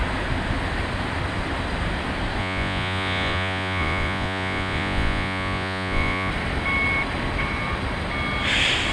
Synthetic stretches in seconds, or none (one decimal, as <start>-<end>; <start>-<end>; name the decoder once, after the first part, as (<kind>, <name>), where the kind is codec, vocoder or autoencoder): 2.4-6.3 (vocoder, Vocos)